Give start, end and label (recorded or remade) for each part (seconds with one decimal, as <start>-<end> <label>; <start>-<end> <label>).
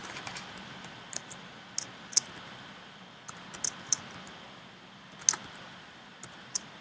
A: 0.0-5.4 recorded; 5.4-6.8 remade